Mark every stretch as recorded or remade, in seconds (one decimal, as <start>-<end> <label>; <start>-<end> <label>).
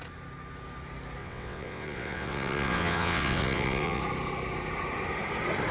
0.0-1.2 recorded; 1.2-4.0 remade; 4.0-5.7 recorded